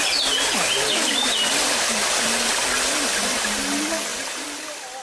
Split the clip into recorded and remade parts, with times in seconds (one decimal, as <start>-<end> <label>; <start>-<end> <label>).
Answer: 0.0-1.1 recorded; 1.1-2.5 remade; 2.5-5.0 recorded